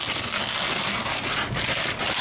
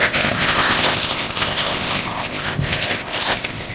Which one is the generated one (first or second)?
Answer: second